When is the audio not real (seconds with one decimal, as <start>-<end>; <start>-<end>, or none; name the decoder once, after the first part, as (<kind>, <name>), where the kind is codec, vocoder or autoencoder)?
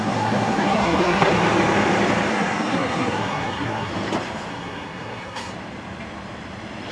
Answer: 0.0-1.3 (codec, SNAC); 2.3-3.9; 4.5-5.5